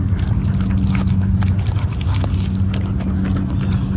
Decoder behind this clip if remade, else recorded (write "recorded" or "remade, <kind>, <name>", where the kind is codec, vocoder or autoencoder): recorded